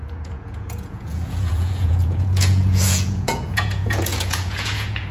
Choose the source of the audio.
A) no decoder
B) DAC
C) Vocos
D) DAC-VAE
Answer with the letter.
C